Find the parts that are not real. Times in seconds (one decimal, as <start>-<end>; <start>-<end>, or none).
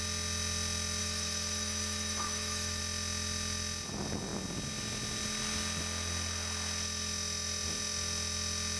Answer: 1.0-2.8